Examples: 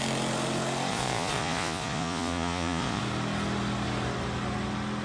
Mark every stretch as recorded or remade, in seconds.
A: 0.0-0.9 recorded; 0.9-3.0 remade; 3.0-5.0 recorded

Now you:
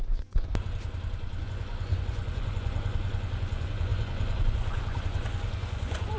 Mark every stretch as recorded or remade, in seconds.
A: 0.0-0.5 remade; 0.5-1.4 recorded; 1.4-6.2 remade